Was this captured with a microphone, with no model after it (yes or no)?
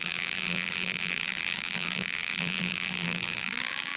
no